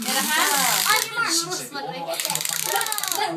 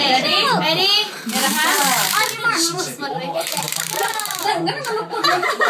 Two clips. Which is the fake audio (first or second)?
second